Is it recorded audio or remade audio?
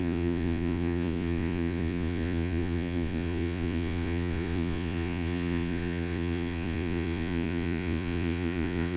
remade